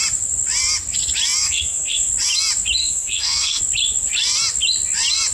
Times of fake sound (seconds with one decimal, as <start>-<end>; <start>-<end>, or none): 1.4-2.1; 2.8-3.6